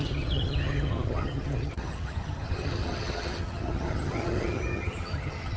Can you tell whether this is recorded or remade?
remade